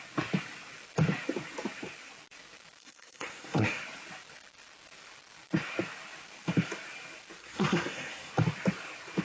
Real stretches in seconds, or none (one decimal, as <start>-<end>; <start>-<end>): 0.0-2.8; 3.8-7.4; 8.3-9.2